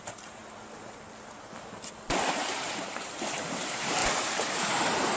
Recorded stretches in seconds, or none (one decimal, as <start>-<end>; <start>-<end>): 0.4-2.7